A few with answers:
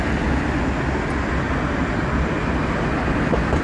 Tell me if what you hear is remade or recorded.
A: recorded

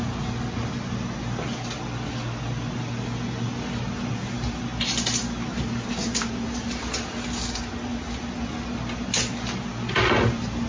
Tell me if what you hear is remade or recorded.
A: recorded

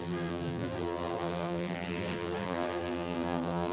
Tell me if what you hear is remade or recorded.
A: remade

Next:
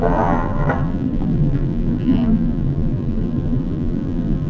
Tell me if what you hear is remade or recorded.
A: remade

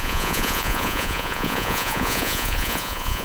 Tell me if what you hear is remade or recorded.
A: remade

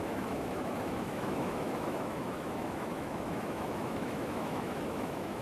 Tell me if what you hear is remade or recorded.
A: remade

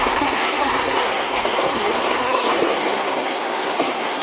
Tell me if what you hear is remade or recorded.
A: remade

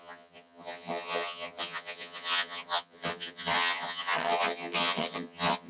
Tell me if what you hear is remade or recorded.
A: remade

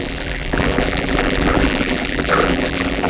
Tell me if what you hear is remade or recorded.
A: remade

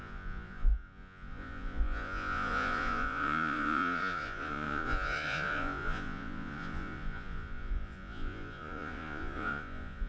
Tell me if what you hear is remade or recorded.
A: remade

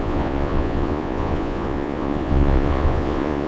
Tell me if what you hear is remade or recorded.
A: remade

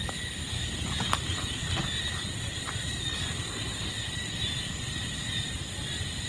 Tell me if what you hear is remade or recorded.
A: recorded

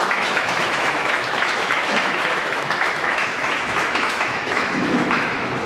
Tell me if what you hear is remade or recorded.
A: remade